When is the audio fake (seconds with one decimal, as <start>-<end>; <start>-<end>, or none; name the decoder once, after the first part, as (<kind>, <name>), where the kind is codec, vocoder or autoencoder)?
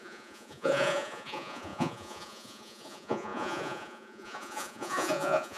0.0-5.6 (vocoder, Vocos)